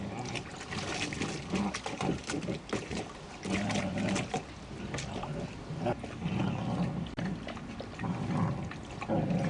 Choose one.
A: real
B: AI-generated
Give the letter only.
A